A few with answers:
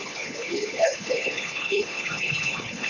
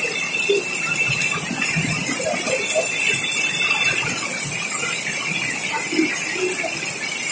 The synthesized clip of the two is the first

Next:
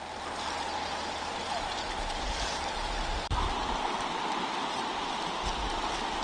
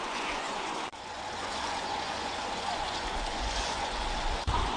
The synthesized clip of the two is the second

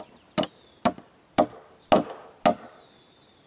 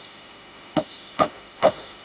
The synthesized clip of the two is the second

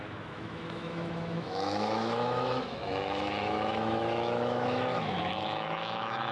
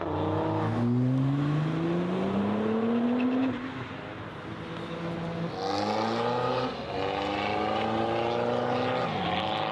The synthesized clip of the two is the first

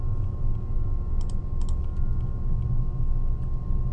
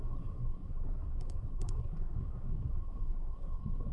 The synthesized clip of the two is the second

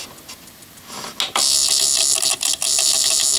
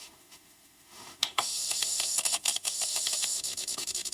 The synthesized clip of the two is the second